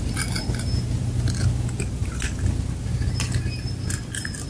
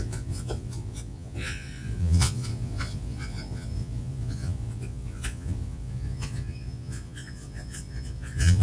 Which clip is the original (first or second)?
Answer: first